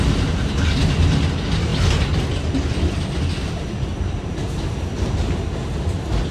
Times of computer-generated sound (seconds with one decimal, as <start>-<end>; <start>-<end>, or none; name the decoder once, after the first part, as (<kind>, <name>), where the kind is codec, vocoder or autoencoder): none